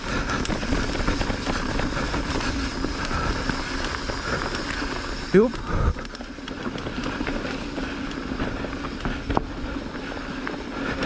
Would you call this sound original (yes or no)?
yes